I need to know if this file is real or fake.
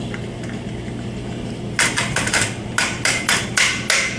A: real